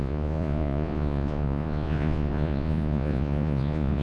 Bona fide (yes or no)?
no